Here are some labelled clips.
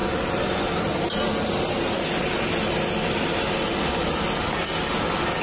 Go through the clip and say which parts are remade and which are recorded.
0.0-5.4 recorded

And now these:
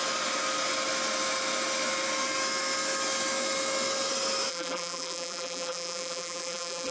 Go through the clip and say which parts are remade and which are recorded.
0.0-4.5 recorded; 4.5-6.9 remade